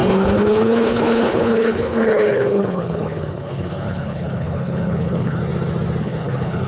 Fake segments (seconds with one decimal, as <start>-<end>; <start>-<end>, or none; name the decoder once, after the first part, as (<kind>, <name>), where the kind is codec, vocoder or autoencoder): 0.0-5.4 (codec, HILCodec); 6.0-6.7

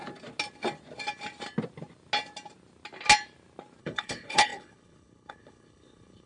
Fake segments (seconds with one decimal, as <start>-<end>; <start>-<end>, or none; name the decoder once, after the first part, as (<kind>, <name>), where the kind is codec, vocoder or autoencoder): 3.8-6.3 (codec, HILCodec)

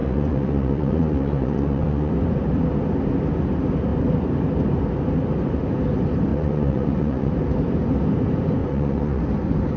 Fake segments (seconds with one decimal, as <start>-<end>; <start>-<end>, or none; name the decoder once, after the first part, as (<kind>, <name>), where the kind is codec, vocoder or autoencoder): 0.0-2.1 (vocoder, Vocos); 6.3-7.3; 8.6-9.2